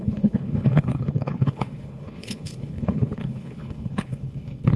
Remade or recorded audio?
remade